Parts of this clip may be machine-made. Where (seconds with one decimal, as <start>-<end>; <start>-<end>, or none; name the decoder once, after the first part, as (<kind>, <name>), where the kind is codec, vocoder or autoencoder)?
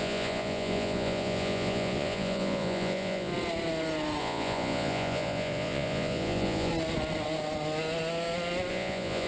0.0-3.3 (vocoder, Vocos); 4.2-6.7; 8.7-9.3